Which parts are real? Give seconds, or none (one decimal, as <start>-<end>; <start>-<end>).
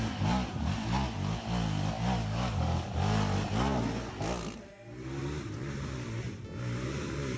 0.0-2.2; 2.9-7.4